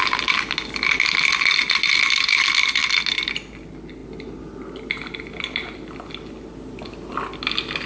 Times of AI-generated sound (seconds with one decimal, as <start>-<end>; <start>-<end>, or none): none